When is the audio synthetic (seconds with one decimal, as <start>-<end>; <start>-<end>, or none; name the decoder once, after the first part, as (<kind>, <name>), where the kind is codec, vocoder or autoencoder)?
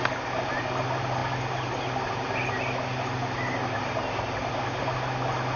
none